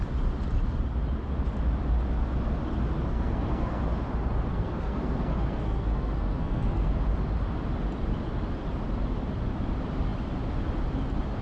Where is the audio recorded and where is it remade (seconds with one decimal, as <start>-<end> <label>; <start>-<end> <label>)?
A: 0.0-3.1 recorded; 3.1-3.8 remade; 3.8-4.5 recorded; 4.5-7.0 remade; 7.0-11.4 recorded

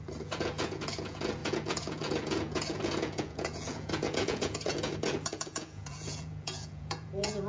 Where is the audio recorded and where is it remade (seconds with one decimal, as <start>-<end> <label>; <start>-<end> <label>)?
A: 0.0-7.5 remade

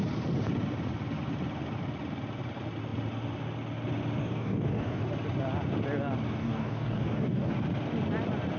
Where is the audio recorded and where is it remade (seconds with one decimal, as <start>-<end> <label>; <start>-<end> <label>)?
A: 0.0-4.2 recorded; 4.2-5.0 remade; 5.0-6.4 recorded; 6.4-7.5 remade; 7.5-8.6 recorded

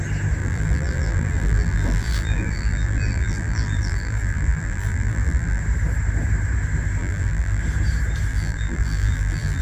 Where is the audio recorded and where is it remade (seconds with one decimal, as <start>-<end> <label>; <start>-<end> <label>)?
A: 0.0-0.4 recorded; 0.4-5.6 remade; 5.6-7.0 recorded; 7.0-7.6 remade; 7.6-8.3 recorded; 8.3-9.6 remade

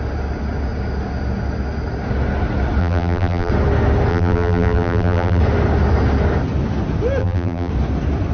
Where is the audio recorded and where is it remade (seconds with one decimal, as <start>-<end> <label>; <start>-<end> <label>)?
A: 0.0-2.8 recorded; 2.8-3.5 remade; 3.5-4.1 recorded; 4.1-5.4 remade; 5.4-7.2 recorded; 7.2-7.7 remade; 7.7-8.3 recorded

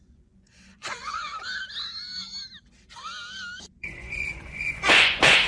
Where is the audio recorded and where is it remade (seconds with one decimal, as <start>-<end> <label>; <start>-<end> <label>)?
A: 0.0-1.3 remade; 1.3-3.8 recorded; 3.8-5.5 remade

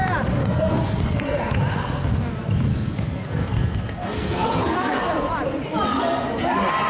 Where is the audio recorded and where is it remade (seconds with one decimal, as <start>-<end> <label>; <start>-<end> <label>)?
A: 0.0-0.4 recorded; 0.4-1.5 remade; 1.5-2.7 recorded; 2.7-5.0 remade; 5.0-5.9 recorded; 5.9-6.4 remade; 6.4-6.9 recorded